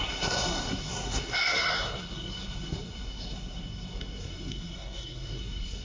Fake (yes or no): yes